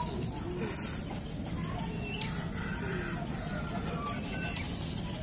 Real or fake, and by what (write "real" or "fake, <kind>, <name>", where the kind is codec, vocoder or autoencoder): real